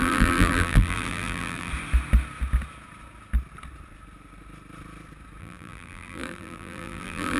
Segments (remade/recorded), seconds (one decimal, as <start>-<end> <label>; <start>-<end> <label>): 0.0-1.7 remade; 1.7-5.4 recorded; 5.4-7.4 remade